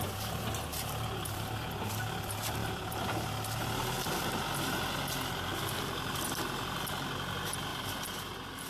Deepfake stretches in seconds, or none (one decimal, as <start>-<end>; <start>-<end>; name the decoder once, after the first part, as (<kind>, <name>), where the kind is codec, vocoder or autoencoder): 0.7-1.3 (vocoder, BigVGAN v2); 2.6-3.3; 7.7-8.7